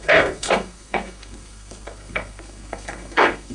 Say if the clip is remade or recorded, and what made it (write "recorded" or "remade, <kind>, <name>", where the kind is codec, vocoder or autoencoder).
remade, codec, SNAC